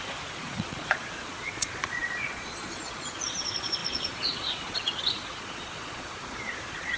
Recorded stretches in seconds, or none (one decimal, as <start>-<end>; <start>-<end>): none